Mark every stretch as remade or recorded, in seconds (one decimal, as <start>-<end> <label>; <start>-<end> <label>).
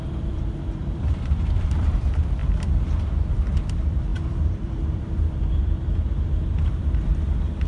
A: 0.0-2.4 remade; 2.4-3.6 recorded; 3.6-7.7 remade